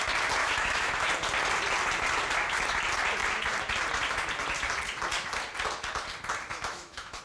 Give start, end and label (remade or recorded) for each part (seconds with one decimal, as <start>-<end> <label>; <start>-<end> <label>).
0.0-0.4 recorded; 0.4-1.1 remade; 1.1-6.5 recorded; 6.5-7.2 remade